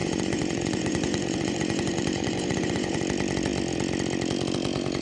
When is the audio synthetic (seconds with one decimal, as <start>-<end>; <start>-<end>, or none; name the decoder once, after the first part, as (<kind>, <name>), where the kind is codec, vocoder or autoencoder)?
0.0-3.0 (vocoder, Vocos)